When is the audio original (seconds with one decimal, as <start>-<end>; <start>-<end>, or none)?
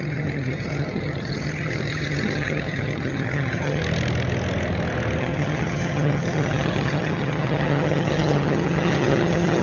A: 3.8-5.2